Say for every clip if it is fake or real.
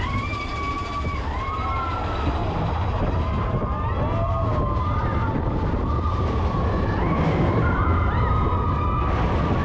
real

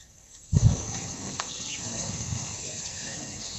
fake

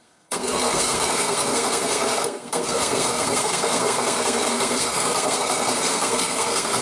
fake